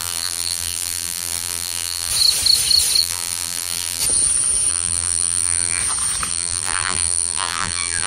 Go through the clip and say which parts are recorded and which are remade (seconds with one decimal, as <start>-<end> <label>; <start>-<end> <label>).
0.0-2.1 remade; 2.1-3.0 recorded; 3.0-4.0 remade; 4.0-4.7 recorded; 4.7-5.8 remade; 5.8-6.3 recorded; 6.3-8.1 remade

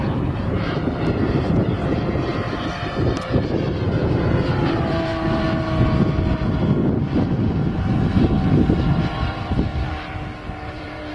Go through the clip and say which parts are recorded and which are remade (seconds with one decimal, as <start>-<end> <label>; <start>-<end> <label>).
0.0-5.1 remade; 5.1-8.5 recorded; 8.5-9.7 remade; 9.7-10.7 recorded; 10.7-11.1 remade